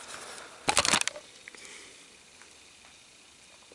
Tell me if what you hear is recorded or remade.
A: recorded